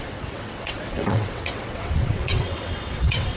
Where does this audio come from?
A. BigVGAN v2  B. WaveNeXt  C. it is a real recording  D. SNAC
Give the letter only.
B